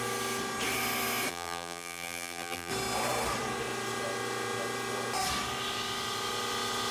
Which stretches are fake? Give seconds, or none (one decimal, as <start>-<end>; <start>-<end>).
1.3-2.7

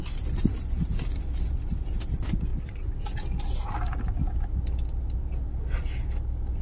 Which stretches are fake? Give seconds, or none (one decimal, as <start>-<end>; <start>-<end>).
0.5-2.0; 2.5-3.0

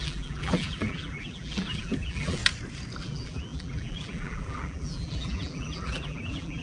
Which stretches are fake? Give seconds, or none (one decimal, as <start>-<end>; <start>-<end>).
0.0-2.4; 3.0-6.6